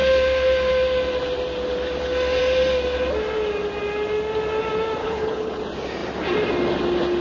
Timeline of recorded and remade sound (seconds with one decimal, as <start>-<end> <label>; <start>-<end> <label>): 0.0-5.0 recorded; 5.0-5.6 remade; 5.6-7.2 recorded